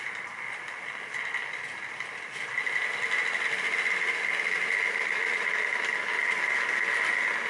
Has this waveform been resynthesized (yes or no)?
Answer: no